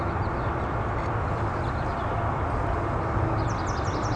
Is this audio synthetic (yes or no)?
no